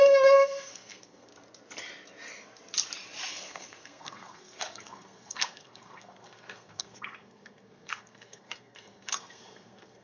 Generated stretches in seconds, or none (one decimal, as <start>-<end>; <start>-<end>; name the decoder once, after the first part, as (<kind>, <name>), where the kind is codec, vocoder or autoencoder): 0.0-1.3 (codec, SNAC); 3.3-10.0